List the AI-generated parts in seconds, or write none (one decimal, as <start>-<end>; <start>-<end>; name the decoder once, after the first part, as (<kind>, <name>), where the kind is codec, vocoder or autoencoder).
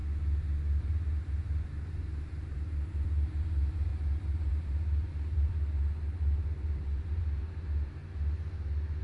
0.8-8.0 (vocoder, BigVGAN v2)